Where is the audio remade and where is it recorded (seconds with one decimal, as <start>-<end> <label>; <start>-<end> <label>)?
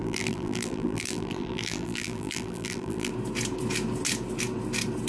0.0-3.1 remade; 3.1-5.1 recorded